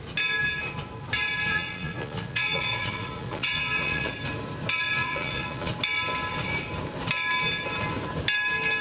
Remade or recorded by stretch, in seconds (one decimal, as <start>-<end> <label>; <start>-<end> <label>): 0.0-1.5 recorded; 1.5-4.1 remade; 4.1-5.0 recorded; 5.0-5.7 remade; 5.7-8.8 recorded